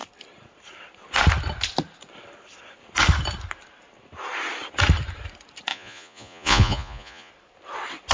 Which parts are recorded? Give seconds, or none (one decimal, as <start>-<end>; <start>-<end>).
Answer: 0.0-5.7; 7.3-8.1